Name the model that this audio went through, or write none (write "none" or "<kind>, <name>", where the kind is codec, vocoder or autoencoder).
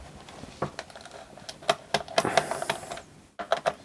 none